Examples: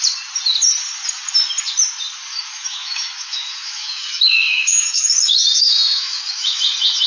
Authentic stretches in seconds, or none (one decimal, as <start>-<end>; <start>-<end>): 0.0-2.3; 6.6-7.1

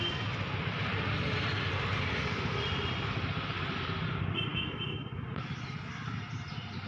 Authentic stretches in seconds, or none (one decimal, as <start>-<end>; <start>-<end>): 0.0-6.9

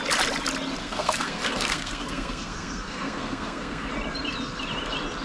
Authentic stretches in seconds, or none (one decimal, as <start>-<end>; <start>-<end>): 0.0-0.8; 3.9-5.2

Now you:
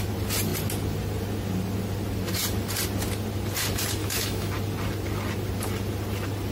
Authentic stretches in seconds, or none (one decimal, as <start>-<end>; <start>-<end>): 0.0-4.0; 4.5-6.5